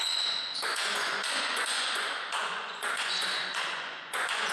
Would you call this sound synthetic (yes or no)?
yes